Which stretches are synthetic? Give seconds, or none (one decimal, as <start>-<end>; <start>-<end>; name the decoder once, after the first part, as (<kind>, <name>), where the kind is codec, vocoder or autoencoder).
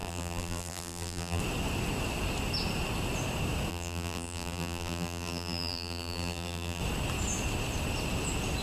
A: 0.0-1.4 (vocoder, BigVGAN v2); 3.7-6.8